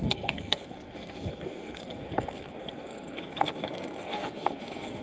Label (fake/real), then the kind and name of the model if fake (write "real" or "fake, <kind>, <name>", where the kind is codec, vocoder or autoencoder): fake, codec, SNAC